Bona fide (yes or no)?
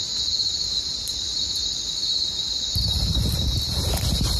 yes